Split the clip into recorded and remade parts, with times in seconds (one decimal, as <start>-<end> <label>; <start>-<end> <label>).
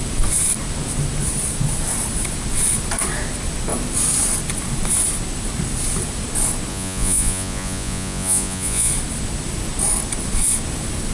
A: 0.0-6.7 recorded; 6.7-8.9 remade; 8.9-11.1 recorded